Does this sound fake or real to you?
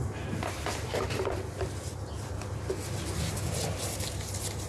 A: real